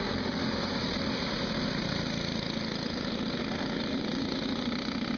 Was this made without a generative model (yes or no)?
yes